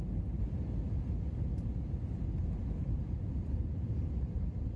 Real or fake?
real